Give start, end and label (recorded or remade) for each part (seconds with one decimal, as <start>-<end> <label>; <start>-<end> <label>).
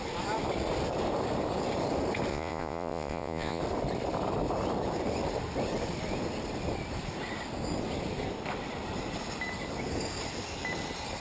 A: 0.0-2.3 recorded; 2.3-3.6 remade; 3.6-11.2 recorded